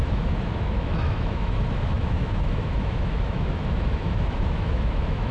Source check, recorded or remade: remade